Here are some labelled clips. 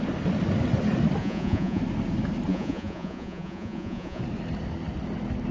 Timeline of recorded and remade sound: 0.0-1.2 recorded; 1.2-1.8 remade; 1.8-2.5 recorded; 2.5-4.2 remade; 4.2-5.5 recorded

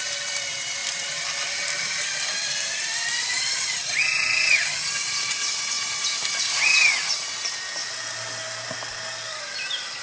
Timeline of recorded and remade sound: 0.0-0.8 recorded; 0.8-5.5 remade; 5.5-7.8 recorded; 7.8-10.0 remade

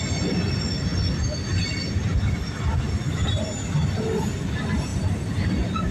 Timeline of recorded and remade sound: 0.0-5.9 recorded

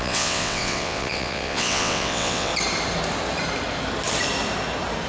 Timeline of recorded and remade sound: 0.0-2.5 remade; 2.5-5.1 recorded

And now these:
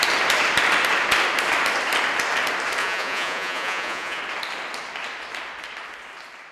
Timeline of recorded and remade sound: 0.0-2.8 recorded; 2.8-4.2 remade; 4.2-6.5 recorded

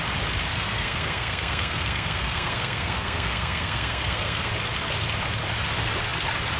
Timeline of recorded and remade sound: 0.0-0.5 recorded; 0.5-4.5 remade; 4.5-6.6 recorded